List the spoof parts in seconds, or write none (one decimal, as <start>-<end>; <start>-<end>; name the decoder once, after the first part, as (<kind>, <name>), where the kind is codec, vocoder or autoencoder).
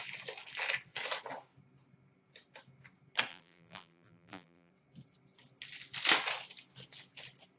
3.3-4.7 (vocoder, BigVGAN v2)